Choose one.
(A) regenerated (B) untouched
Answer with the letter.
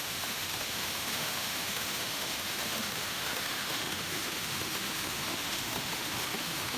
A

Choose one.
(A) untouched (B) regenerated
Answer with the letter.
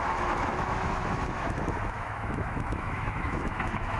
B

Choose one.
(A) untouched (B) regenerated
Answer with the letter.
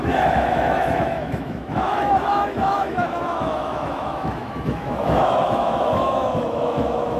B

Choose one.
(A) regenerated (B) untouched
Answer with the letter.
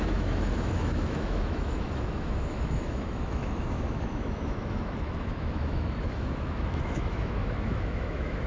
A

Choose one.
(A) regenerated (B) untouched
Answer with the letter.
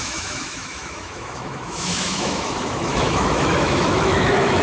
A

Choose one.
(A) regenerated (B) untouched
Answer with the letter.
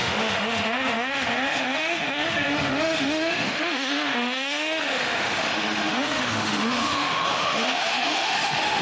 A